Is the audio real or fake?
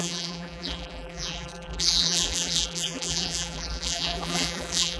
fake